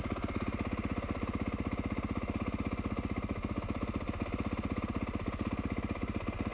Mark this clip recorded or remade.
recorded